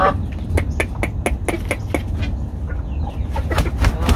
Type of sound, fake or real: real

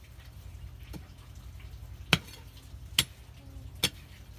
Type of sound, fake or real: real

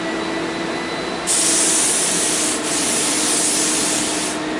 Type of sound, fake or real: real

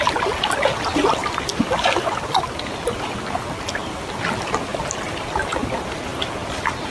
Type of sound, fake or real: real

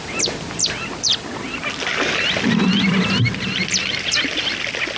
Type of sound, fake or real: real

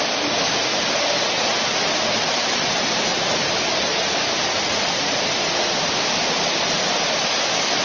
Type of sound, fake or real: real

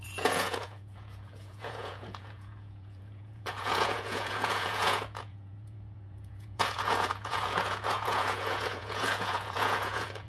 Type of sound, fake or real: fake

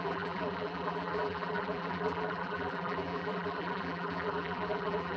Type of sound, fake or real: fake